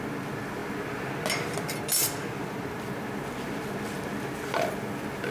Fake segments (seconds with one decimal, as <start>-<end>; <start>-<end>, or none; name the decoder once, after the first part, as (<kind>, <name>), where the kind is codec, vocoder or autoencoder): none